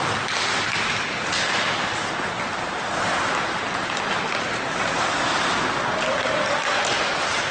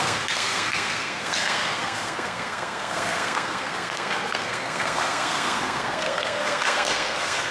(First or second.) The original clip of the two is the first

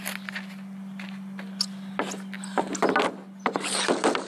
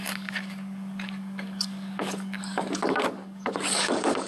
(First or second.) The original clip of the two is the first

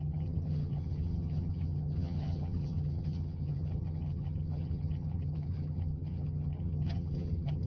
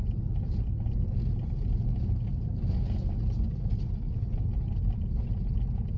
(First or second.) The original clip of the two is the second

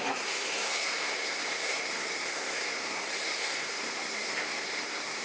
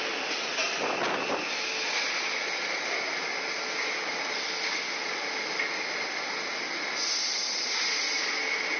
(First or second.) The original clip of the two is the second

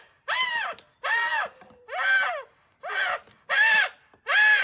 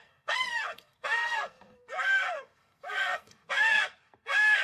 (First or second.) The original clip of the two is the first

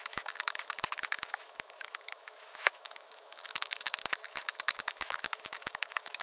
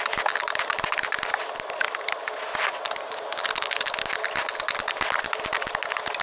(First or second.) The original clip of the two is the second